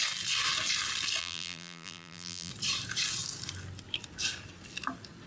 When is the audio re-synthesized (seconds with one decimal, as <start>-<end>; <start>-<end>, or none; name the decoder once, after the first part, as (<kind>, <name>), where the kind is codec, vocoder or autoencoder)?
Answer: 1.2-2.5 (vocoder, BigVGAN v2)